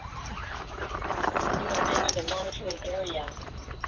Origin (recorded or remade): remade